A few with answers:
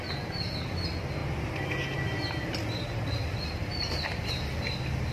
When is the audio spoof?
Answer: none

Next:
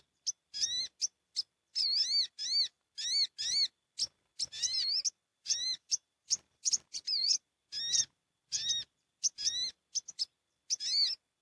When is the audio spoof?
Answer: 5.3-7.4 (vocoder, BigVGAN v2)